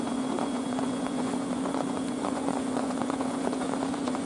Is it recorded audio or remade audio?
remade